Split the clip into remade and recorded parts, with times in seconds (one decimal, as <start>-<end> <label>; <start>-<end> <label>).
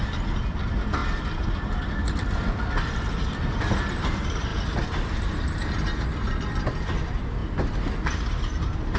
0.0-1.0 remade; 1.0-2.1 recorded; 2.1-4.5 remade; 4.5-6.6 recorded; 6.6-7.4 remade; 7.4-8.1 recorded; 8.1-9.0 remade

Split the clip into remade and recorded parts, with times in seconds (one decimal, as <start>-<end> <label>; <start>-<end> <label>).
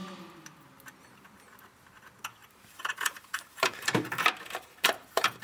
0.0-2.4 recorded; 2.4-5.4 remade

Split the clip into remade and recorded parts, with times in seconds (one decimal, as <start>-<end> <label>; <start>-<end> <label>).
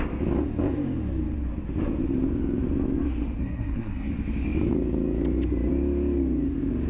0.0-3.4 recorded; 3.4-4.1 remade; 4.1-6.9 recorded